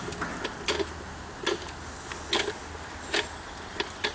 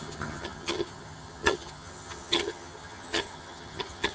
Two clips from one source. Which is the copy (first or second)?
second